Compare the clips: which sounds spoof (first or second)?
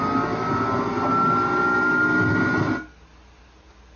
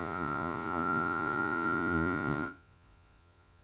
second